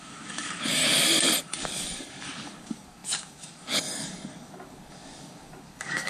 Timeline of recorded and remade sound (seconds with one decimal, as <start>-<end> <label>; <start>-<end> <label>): 0.0-0.8 remade; 0.8-1.4 recorded; 1.4-6.1 remade